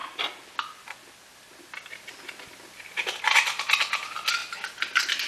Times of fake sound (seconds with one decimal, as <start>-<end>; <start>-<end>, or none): none